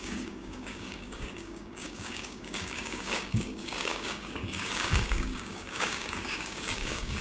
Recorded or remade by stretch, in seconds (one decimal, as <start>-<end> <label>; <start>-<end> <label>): 0.0-7.2 remade